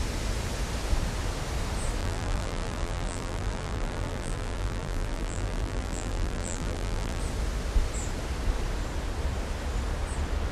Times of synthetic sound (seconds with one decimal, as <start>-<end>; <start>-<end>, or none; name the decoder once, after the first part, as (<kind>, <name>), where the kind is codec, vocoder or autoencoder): 2.0-7.2 (vocoder, BigVGAN v2)